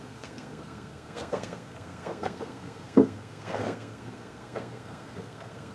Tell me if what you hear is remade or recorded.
remade